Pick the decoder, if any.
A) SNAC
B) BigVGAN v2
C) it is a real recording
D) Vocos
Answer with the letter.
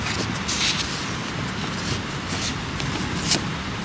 C